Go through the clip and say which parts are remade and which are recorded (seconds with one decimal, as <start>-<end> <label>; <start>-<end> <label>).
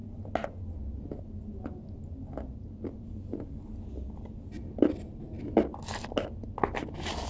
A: 0.0-7.3 recorded